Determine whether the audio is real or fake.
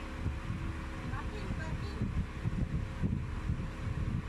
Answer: real